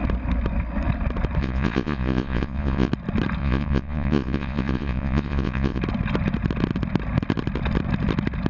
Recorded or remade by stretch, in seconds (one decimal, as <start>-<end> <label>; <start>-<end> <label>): 0.0-1.4 recorded; 1.4-2.9 remade; 2.9-3.4 recorded; 3.4-5.8 remade; 5.8-8.5 recorded